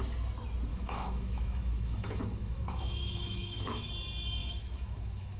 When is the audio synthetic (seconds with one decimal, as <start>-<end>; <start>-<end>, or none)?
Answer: 0.7-3.9; 4.4-5.4